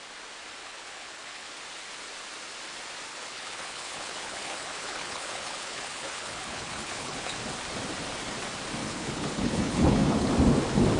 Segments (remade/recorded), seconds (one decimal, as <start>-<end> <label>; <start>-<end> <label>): 0.0-0.6 recorded; 0.6-1.5 remade; 1.5-3.1 recorded; 3.1-7.4 remade; 7.4-8.8 recorded; 8.8-10.3 remade; 10.3-11.0 recorded